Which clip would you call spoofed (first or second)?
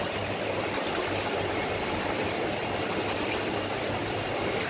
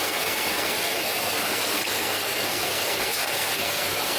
second